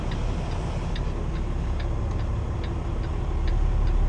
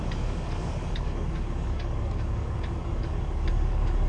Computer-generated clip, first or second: second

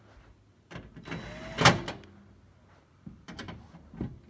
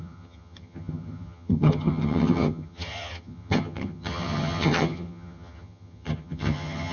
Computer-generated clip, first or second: second